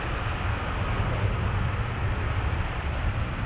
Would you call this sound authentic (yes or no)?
yes